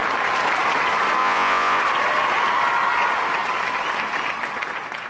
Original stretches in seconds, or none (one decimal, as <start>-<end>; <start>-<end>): 0.0-1.2; 1.8-5.1